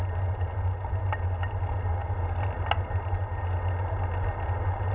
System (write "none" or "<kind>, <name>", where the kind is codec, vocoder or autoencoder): none